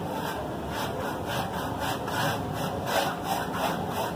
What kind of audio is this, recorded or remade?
recorded